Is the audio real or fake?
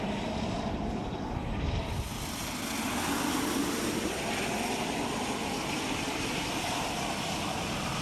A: real